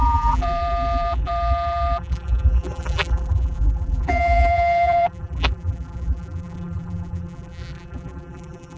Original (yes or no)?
no